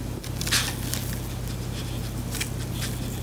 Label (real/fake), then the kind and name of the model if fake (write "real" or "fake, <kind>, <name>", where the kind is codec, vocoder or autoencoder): real